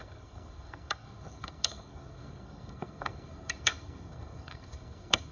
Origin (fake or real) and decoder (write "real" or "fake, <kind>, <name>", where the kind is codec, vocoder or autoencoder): fake, codec, SNAC